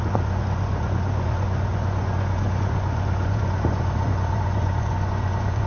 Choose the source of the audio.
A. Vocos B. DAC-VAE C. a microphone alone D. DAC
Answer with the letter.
A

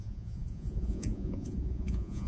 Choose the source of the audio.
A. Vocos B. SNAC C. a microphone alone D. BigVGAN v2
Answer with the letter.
A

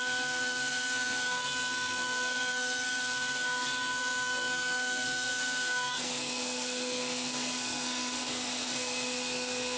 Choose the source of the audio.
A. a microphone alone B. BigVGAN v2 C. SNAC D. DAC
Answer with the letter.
C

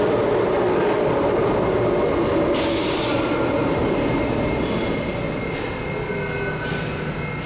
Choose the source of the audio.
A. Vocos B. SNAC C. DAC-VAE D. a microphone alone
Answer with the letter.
D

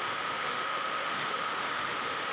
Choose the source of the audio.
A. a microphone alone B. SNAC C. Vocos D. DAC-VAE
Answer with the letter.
D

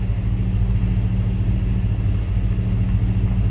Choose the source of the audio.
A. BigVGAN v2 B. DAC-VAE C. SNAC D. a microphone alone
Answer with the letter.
D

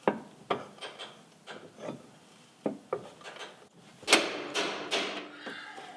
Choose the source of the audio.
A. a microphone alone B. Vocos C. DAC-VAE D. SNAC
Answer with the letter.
A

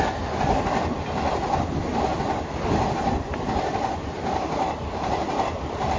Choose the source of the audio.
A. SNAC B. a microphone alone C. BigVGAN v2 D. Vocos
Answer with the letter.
B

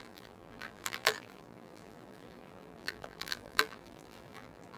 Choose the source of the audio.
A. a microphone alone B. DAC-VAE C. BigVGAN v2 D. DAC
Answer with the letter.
C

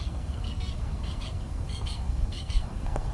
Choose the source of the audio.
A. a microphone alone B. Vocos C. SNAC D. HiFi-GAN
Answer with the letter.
C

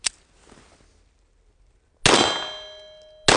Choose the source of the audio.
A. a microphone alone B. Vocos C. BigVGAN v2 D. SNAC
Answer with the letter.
A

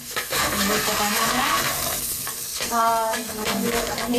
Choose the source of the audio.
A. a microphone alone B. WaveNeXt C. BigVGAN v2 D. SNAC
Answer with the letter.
D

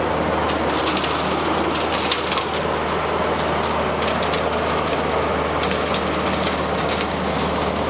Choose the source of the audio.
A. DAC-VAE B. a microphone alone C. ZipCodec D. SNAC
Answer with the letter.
B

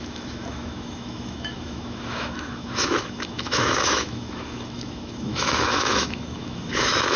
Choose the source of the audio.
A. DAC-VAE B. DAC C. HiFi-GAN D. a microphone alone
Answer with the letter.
A